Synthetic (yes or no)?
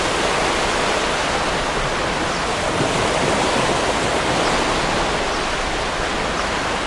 no